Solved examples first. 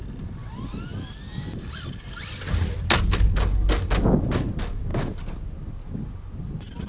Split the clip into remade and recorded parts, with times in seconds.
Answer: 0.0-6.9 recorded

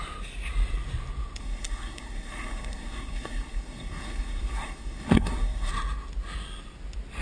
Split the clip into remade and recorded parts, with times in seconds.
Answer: 0.0-1.4 recorded; 1.4-5.7 remade; 5.7-7.2 recorded

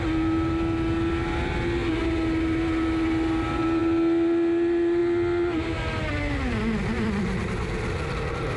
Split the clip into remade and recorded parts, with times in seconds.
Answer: 0.0-8.6 recorded

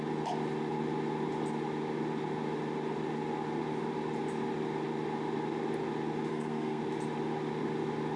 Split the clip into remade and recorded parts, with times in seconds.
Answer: 0.0-6.3 recorded; 6.3-6.8 remade; 6.8-8.2 recorded

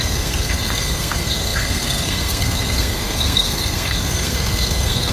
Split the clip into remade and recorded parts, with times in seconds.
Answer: 0.0-5.1 remade

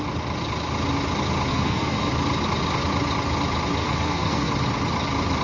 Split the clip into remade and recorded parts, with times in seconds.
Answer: 0.0-1.5 recorded; 1.5-2.1 remade; 2.1-3.8 recorded; 3.8-4.5 remade; 4.5-5.4 recorded